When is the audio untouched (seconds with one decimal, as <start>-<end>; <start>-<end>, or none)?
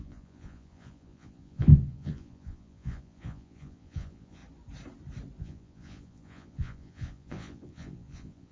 4.4-5.4